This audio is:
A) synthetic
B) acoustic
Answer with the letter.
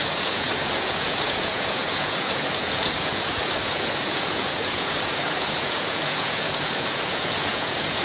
A